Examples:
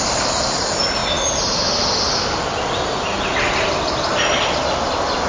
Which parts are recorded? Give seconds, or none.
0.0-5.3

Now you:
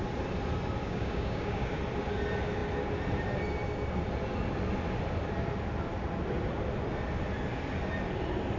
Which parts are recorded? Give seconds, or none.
0.0-0.8; 1.8-8.6

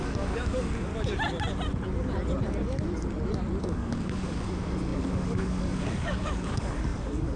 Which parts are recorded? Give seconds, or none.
0.9-3.6

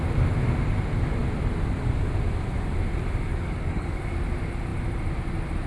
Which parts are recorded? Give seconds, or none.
0.0-3.3; 4.0-5.7

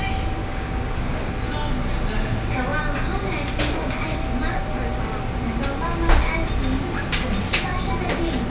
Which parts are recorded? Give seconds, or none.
0.0-0.4; 1.3-8.5

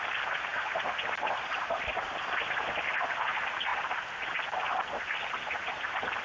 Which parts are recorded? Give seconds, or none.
0.0-6.2